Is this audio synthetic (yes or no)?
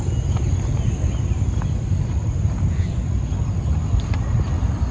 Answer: no